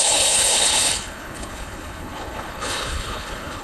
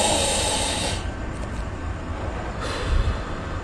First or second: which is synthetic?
first